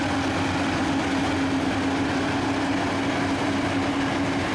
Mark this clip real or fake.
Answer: real